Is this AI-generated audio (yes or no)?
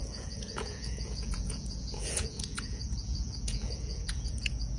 yes